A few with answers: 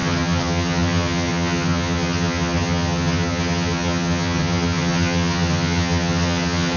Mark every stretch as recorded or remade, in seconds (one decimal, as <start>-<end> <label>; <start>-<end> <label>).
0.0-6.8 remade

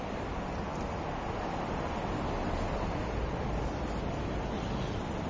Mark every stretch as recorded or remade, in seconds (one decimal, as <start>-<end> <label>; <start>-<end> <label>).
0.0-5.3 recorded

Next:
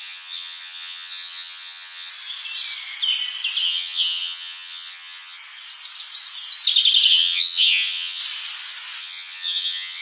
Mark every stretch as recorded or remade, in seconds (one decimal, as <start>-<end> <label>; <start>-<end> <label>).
0.0-2.1 remade; 2.1-3.6 recorded; 3.6-5.4 remade; 5.4-7.1 recorded; 7.1-8.2 remade; 8.2-9.0 recorded; 9.0-10.0 remade

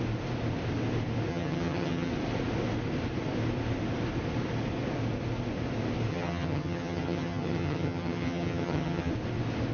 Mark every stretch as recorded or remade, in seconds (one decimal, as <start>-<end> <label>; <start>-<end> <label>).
0.0-1.3 recorded; 1.3-2.1 remade; 2.1-6.1 recorded; 6.1-9.1 remade; 9.1-9.7 recorded

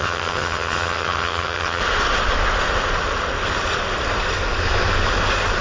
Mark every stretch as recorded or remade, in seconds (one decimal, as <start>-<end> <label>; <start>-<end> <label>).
0.0-1.8 remade; 1.8-5.6 recorded

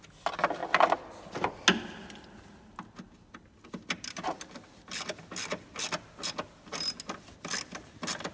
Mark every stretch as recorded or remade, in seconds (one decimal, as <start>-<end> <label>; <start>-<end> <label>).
0.0-8.3 recorded